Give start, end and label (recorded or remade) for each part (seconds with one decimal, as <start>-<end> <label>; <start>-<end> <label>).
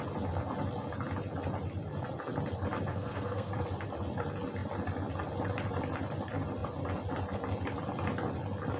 0.0-2.9 recorded; 2.9-3.5 remade; 3.5-8.8 recorded